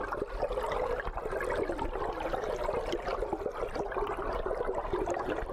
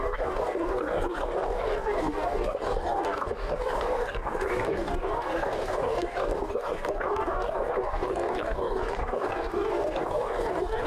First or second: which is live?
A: first